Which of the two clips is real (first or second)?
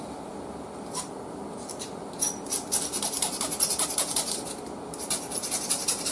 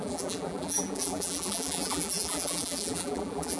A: first